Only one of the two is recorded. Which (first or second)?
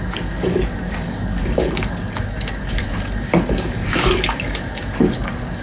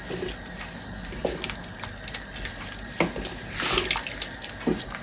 second